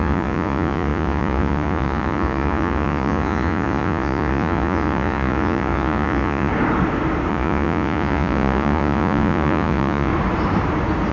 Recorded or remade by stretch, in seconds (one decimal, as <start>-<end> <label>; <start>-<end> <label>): 0.0-6.5 remade; 6.5-7.3 recorded; 7.3-10.1 remade; 10.1-11.1 recorded